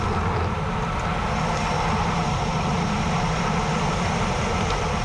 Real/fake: real